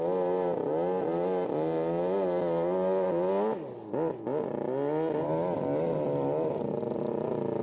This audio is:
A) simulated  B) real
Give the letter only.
B